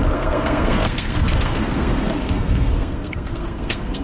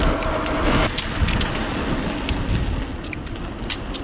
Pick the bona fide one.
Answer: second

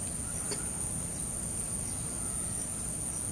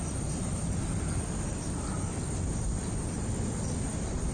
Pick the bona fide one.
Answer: first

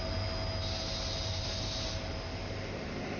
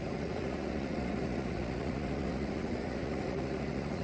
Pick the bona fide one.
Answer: first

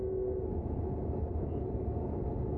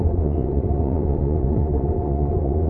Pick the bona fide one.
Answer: first